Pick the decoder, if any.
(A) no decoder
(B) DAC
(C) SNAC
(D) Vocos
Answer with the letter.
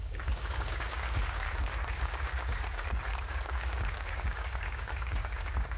B